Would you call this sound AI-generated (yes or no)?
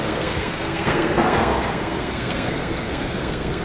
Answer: yes